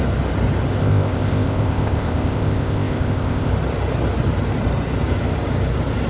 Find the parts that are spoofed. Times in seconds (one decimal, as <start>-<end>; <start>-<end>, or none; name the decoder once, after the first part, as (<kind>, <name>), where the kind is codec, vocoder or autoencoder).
0.8-3.5 (codec, ZipCodec)